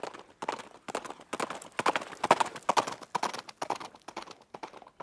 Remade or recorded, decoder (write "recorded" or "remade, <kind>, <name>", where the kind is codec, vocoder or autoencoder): recorded